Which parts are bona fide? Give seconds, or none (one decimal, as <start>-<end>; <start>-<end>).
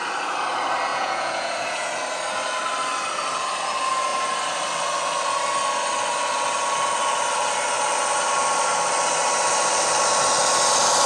0.0-0.9; 1.9-11.1